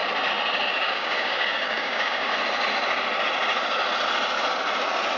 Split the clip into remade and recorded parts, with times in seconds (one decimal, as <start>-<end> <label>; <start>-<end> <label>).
0.0-0.7 recorded; 0.7-2.3 remade; 2.3-5.2 recorded